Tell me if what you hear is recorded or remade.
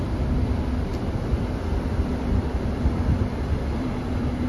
remade